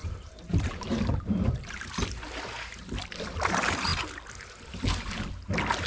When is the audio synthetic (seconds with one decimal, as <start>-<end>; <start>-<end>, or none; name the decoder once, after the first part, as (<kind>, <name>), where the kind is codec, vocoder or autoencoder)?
0.0-1.1 (vocoder, BigVGAN v2)